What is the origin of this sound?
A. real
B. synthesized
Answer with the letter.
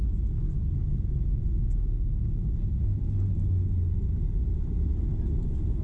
A